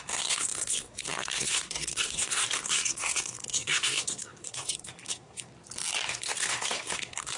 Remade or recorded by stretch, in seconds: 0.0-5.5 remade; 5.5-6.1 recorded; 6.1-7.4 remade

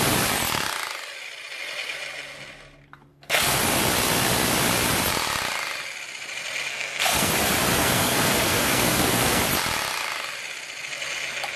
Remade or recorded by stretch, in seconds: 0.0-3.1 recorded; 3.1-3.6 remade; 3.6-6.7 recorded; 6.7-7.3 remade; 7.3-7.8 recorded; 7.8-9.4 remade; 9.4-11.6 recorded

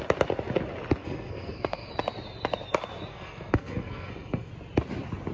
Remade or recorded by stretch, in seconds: 0.0-1.0 recorded; 1.0-1.9 remade; 1.9-3.1 recorded; 3.1-4.5 remade; 4.5-5.3 recorded